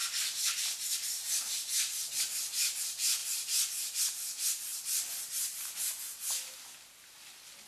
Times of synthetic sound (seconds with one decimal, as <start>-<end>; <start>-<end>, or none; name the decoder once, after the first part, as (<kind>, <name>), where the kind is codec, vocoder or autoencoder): 0.0-2.2 (vocoder, BigVGAN v2); 4.7-5.8